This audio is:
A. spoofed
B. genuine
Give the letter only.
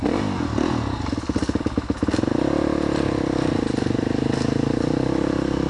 B